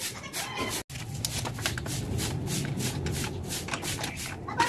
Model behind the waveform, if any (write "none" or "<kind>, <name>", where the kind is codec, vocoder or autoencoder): none